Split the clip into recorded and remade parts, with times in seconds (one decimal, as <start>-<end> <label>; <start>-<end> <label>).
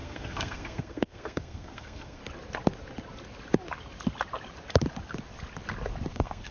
0.0-2.2 remade; 2.2-6.1 recorded; 6.1-6.5 remade